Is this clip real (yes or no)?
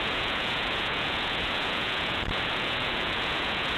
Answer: no